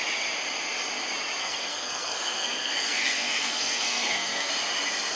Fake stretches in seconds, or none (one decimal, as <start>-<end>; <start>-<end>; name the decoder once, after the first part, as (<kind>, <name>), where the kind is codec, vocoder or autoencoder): 1.4-4.5 (codec, SNAC)